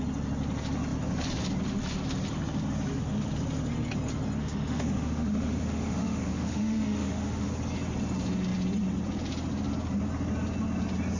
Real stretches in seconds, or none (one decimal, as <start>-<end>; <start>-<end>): 0.0-4.4; 7.5-11.2